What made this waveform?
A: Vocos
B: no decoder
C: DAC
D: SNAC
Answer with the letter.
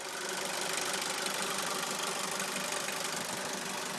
B